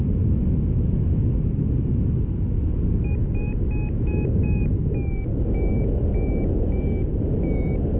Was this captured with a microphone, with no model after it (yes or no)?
yes